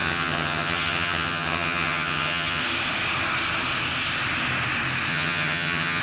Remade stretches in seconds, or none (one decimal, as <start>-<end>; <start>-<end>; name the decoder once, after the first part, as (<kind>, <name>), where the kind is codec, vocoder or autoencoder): 0.0-2.6 (vocoder, HiFi-GAN); 5.1-6.0